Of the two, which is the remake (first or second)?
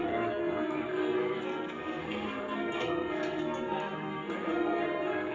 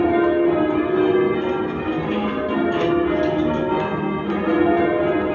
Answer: first